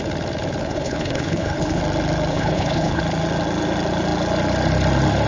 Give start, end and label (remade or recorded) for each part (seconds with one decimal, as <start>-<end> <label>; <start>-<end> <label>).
0.0-0.6 recorded; 0.6-1.8 remade; 1.8-2.3 recorded; 2.3-3.0 remade; 3.0-5.3 recorded